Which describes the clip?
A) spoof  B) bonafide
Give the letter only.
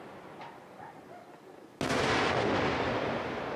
B